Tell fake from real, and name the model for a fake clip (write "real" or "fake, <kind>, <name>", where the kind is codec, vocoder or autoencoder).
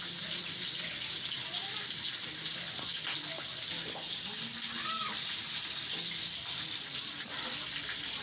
real